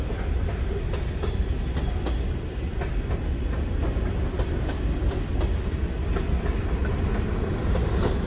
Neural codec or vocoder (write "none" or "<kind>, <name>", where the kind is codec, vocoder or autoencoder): none